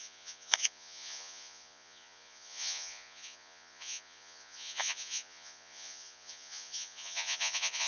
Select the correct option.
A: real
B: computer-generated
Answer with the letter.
B